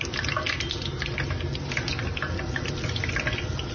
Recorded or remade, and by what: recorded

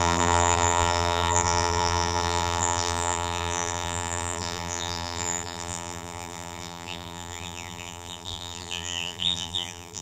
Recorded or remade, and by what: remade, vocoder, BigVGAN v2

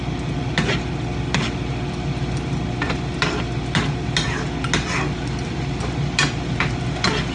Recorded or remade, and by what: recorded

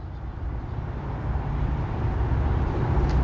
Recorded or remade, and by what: remade, vocoder, BigVGAN v2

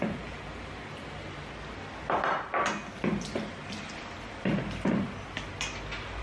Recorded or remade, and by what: recorded